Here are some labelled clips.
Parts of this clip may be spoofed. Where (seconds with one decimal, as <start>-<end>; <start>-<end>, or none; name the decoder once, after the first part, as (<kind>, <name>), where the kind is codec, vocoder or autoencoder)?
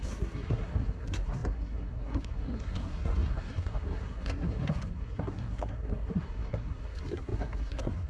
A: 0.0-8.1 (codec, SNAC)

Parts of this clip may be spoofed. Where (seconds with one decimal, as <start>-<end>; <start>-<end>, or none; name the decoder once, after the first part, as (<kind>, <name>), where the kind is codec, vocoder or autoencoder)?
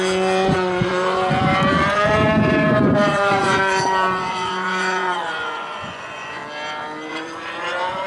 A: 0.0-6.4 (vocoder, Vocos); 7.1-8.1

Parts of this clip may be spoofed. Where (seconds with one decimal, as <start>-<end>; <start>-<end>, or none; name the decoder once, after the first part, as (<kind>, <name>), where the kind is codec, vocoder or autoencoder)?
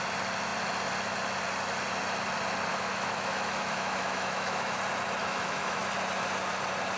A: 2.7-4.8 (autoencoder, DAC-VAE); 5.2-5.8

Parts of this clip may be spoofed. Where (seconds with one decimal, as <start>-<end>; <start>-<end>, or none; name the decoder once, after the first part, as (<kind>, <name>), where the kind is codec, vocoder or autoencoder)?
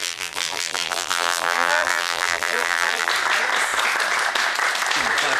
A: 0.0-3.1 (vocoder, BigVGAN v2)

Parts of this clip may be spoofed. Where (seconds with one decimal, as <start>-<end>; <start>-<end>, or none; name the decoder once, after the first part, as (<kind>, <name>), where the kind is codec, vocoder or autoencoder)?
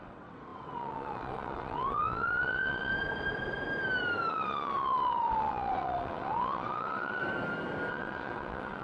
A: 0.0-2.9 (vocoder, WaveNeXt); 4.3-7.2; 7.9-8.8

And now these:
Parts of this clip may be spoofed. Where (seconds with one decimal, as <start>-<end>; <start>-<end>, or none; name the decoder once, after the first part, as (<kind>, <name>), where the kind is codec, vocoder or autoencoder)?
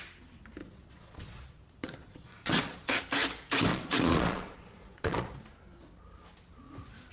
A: 0.6-3.0 (vocoder, Vocos); 3.7-5.3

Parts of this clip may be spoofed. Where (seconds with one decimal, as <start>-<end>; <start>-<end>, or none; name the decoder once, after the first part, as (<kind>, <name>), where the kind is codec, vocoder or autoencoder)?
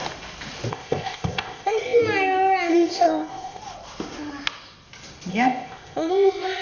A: 0.7-2.0 (codec, ZipCodec); 2.7-3.6; 5.3-6.6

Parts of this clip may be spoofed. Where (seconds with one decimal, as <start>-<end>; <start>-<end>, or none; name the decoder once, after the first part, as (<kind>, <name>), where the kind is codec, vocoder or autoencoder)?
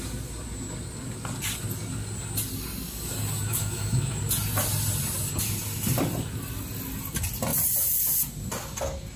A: 3.5-4.2 (autoencoder, DAC-VAE)